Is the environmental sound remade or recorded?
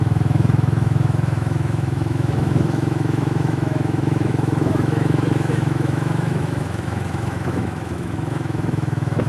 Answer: remade